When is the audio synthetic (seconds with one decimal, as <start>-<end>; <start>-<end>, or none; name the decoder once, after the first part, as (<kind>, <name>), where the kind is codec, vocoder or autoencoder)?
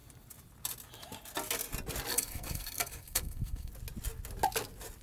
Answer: 2.1-3.7 (codec, SNAC)